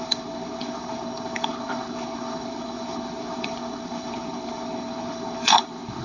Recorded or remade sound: remade